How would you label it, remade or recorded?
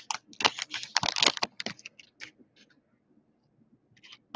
recorded